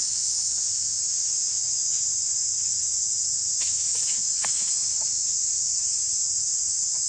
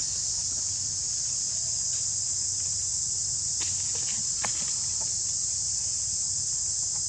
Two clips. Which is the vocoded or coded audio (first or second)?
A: first